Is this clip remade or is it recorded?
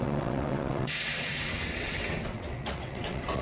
remade